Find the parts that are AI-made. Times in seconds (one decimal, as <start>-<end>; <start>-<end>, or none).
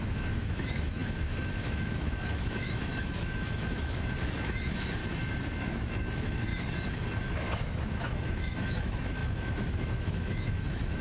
0.0-5.0; 5.6-6.5; 7.2-11.0